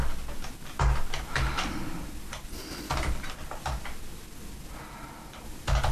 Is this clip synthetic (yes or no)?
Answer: no